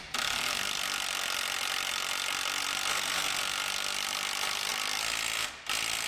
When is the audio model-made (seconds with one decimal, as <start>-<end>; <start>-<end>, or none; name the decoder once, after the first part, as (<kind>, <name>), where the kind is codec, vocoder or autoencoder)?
2.9-3.4 (codec, SNAC)